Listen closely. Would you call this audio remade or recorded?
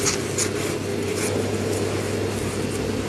recorded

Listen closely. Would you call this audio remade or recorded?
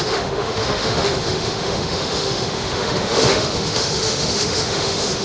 remade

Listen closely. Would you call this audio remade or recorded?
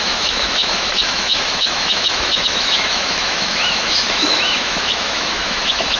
remade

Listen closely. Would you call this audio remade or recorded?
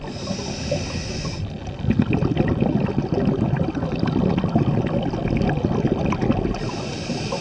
recorded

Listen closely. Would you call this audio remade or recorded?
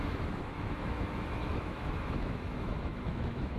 remade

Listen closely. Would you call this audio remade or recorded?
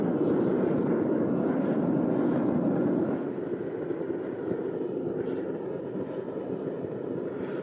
recorded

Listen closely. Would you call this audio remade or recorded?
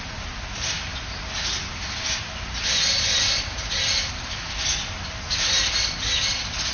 recorded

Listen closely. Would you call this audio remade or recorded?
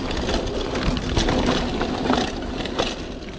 recorded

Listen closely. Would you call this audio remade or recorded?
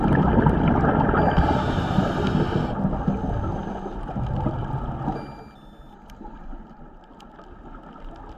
recorded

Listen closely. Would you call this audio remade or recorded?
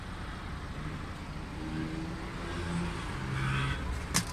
recorded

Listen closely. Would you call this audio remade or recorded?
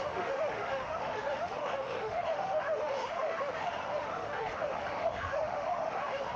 remade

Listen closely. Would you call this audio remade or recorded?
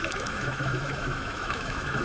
remade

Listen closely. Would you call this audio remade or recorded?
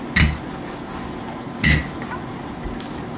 recorded